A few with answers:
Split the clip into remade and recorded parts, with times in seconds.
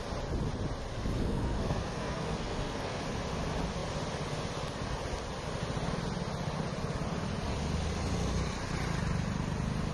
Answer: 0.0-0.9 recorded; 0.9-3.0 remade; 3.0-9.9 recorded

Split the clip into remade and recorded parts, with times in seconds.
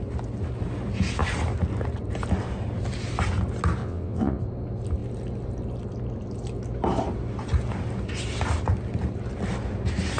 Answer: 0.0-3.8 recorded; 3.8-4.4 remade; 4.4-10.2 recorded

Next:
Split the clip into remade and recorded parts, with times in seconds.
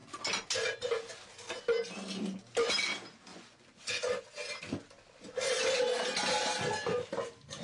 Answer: 0.0-3.3 recorded; 3.3-4.1 remade; 4.1-7.6 recorded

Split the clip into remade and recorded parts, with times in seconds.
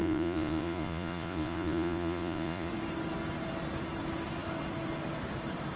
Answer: 0.0-2.7 remade; 2.7-5.8 recorded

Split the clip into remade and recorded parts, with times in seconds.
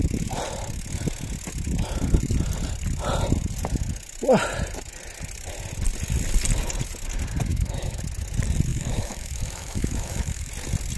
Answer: 0.0-7.5 recorded; 7.5-8.0 remade; 8.0-8.7 recorded; 8.7-10.5 remade; 10.5-11.0 recorded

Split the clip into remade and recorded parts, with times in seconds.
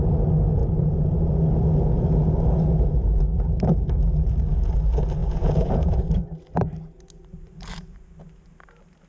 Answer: 0.0-5.2 recorded; 5.2-6.1 remade; 6.1-9.1 recorded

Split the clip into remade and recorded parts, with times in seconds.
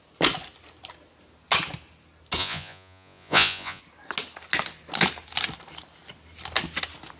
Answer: 0.0-2.4 recorded; 2.4-3.8 remade; 3.8-7.2 recorded